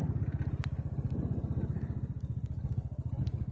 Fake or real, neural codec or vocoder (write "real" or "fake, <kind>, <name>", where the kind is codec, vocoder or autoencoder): real